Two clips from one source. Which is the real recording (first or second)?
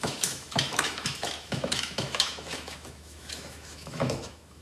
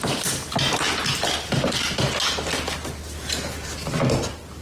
second